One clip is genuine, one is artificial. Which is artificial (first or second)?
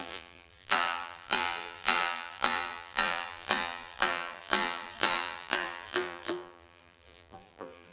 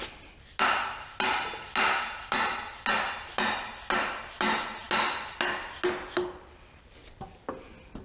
first